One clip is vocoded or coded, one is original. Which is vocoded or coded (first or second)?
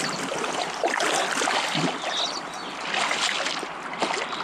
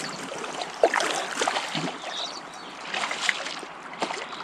second